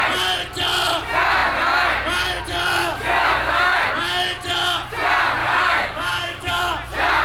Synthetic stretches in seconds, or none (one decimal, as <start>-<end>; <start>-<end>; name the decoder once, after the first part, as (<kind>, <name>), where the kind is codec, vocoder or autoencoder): 2.8-3.9 (codec, DAC); 5.4-6.7